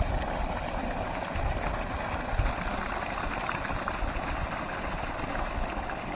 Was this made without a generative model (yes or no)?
yes